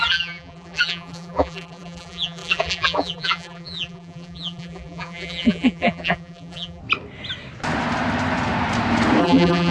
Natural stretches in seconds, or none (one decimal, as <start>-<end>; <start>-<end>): 6.8-9.2